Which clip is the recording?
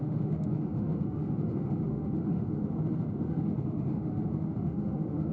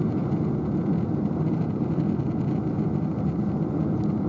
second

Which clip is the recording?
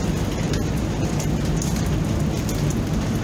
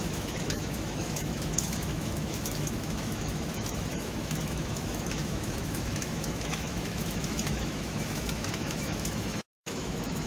first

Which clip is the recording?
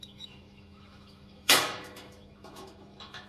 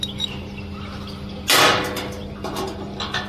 second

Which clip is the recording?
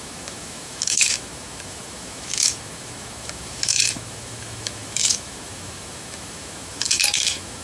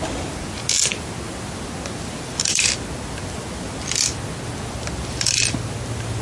second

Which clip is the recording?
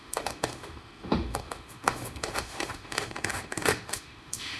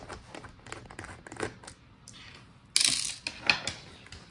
second